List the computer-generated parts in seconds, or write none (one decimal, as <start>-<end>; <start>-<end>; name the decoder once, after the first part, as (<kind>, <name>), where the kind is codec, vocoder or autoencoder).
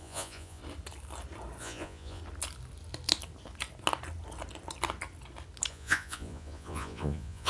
0.0-0.6 (vocoder, Vocos); 1.6-2.2; 5.7-7.5